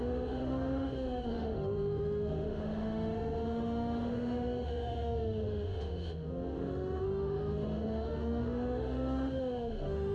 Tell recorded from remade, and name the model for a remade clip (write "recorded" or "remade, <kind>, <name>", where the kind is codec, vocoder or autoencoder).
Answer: remade, autoencoder, DAC-VAE